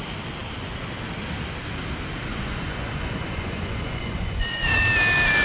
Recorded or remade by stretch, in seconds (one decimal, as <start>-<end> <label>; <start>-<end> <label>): 0.0-2.3 recorded; 2.3-4.8 remade; 4.8-5.4 recorded